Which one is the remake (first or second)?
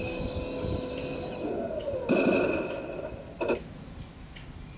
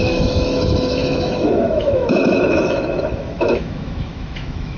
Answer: second